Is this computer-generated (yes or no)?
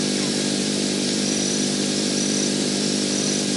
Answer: yes